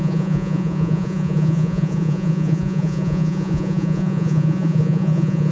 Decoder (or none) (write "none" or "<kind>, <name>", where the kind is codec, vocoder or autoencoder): vocoder, Vocos